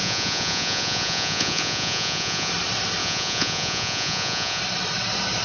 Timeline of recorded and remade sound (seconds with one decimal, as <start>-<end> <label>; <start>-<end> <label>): 0.0-2.5 remade; 2.5-3.0 recorded; 3.0-4.6 remade; 4.6-5.4 recorded